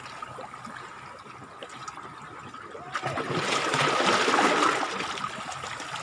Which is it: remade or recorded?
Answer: recorded